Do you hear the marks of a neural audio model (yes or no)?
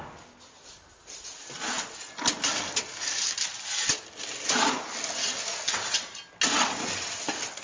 no